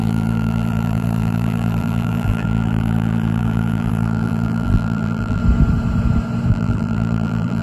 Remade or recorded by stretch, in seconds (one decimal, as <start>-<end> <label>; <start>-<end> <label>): 0.0-5.4 remade; 5.4-6.5 recorded; 6.5-7.6 remade